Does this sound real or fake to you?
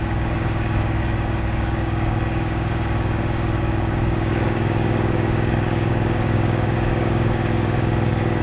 fake